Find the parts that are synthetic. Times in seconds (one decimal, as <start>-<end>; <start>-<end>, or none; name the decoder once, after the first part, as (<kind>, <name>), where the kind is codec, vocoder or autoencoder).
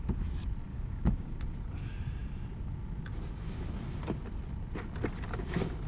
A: 0.7-1.4 (codec, DAC)